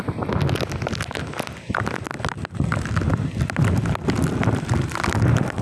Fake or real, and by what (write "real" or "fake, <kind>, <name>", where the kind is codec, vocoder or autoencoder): real